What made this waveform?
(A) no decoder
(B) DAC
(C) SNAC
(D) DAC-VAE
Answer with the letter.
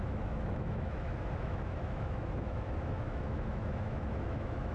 D